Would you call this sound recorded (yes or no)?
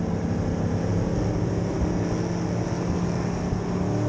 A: yes